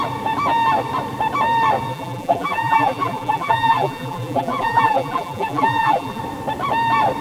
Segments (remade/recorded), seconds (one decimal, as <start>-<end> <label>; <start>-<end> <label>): 0.0-1.9 recorded; 1.9-6.2 remade; 6.2-7.2 recorded